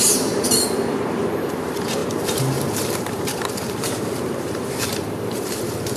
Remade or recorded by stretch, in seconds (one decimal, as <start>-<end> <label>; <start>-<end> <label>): 0.0-6.0 remade